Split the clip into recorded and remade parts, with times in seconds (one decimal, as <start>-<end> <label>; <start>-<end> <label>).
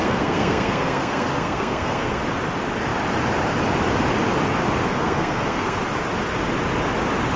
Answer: 0.0-2.2 remade; 2.2-4.8 recorded; 4.8-5.8 remade; 5.8-7.4 recorded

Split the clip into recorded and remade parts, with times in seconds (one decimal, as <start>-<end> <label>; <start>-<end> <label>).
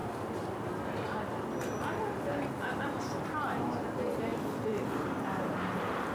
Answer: 0.0-4.3 recorded; 4.3-6.1 remade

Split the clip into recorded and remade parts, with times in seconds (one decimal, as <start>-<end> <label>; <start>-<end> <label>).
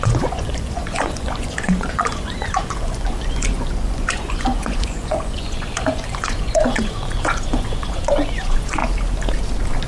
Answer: 0.0-8.8 remade; 8.8-9.9 recorded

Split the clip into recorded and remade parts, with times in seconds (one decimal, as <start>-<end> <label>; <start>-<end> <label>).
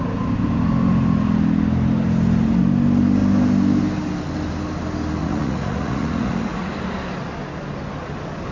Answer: 0.0-5.2 recorded; 5.2-6.7 remade; 6.7-8.5 recorded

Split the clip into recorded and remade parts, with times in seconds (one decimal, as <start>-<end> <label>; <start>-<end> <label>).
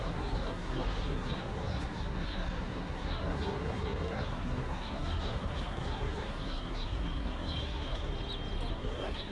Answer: 0.0-8.1 remade; 8.1-8.7 recorded; 8.7-9.3 remade